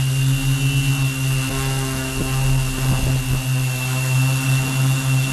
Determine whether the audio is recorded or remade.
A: recorded